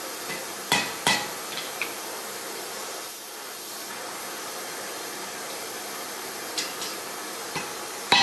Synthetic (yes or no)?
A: yes